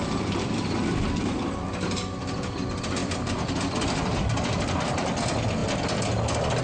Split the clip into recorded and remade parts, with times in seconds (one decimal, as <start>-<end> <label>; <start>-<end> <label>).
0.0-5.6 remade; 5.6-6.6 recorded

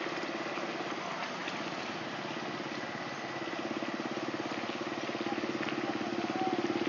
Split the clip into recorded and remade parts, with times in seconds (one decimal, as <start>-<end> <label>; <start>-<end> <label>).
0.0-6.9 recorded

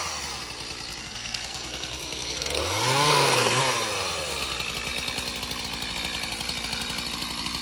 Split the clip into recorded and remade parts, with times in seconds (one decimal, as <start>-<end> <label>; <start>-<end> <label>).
0.0-1.0 recorded; 1.0-3.6 remade; 3.6-7.6 recorded